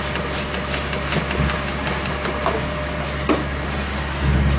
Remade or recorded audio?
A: recorded